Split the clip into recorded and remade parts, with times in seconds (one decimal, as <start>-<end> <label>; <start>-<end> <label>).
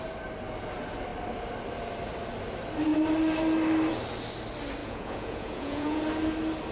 0.0-4.8 recorded; 4.8-6.0 remade; 6.0-6.7 recorded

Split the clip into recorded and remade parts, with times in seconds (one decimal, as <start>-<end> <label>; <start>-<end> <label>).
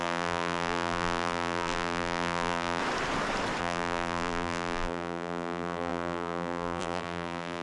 0.0-2.8 remade; 2.8-3.6 recorded; 3.6-7.6 remade